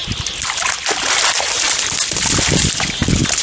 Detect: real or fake real